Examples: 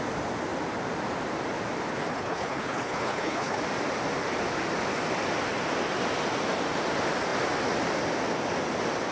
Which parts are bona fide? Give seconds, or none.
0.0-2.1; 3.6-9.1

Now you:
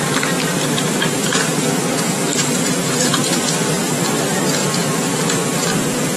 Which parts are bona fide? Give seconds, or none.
0.0-1.2; 2.6-3.2; 3.8-6.2

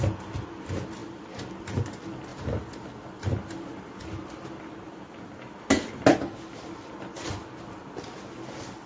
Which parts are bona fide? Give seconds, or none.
0.0-8.9

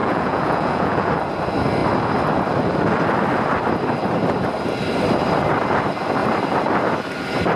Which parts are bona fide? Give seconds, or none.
1.1-7.6

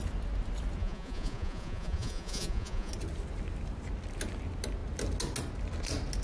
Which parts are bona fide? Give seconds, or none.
0.0-0.8; 2.9-6.2

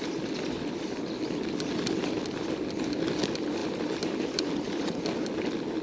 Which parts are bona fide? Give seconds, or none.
0.0-3.6; 5.3-5.8